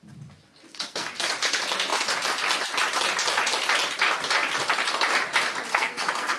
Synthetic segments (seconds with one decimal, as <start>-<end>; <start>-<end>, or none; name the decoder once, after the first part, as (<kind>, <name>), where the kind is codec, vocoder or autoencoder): 0.7-1.3 (codec, SNAC); 5.7-6.4